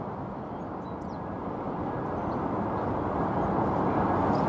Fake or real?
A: real